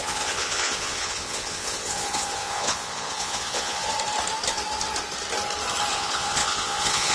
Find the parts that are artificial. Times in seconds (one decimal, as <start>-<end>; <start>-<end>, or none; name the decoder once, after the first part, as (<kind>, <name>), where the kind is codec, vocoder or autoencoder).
0.0-3.9 (vocoder, Vocos); 5.9-7.1